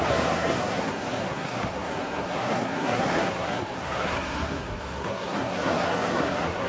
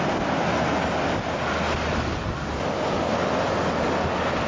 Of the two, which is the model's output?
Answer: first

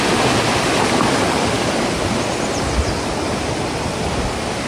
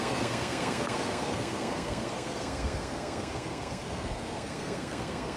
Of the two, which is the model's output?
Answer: second